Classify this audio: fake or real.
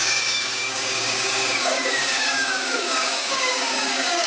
fake